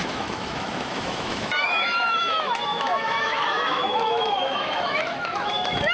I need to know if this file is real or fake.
fake